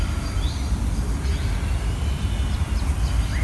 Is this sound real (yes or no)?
yes